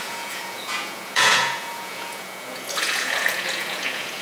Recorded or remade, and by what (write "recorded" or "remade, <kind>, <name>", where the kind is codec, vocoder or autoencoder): remade, vocoder, Vocos